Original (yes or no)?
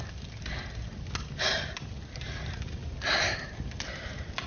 yes